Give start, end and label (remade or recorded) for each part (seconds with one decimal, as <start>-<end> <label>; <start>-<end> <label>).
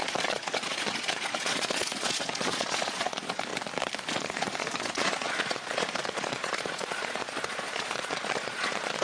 0.0-3.5 remade; 3.5-4.1 recorded; 4.1-9.0 remade